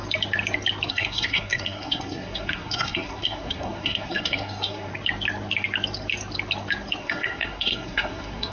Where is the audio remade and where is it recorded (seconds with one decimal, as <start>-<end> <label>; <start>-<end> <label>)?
0.0-0.9 recorded; 0.9-4.9 remade; 4.9-7.0 recorded; 7.0-8.5 remade